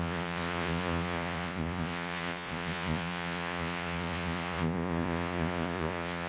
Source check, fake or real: fake